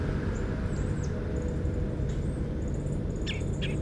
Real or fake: real